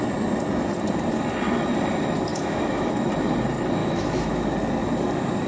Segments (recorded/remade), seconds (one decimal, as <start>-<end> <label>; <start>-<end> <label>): 0.0-2.3 recorded; 2.3-3.1 remade; 3.1-3.8 recorded; 3.8-4.4 remade; 4.4-5.5 recorded